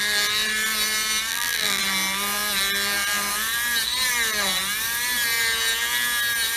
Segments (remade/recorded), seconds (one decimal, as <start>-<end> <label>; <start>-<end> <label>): 0.0-1.3 recorded; 1.3-1.8 remade; 1.8-6.6 recorded